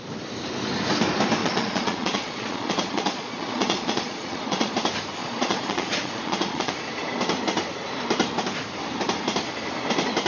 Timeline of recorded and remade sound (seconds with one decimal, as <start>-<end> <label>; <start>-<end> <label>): 0.0-1.4 recorded; 1.4-4.7 remade; 4.7-5.2 recorded; 5.2-6.7 remade; 6.7-10.3 recorded